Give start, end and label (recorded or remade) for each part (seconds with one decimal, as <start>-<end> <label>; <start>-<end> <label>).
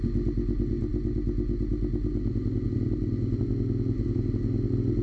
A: 0.0-5.0 recorded